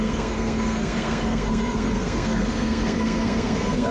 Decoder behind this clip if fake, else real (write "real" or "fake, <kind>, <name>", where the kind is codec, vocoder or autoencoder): fake, codec, SNAC